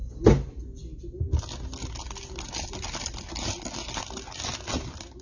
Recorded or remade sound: recorded